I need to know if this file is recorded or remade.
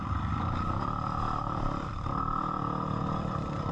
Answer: remade